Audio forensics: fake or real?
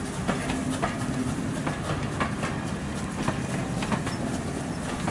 real